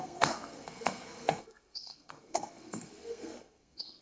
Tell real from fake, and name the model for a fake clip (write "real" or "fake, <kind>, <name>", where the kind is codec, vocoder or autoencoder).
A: fake, codec, SNAC